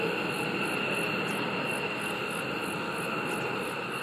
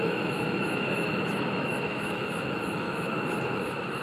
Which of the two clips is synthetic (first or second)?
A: second